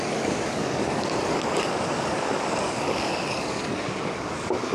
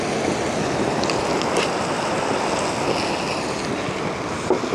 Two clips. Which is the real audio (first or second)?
second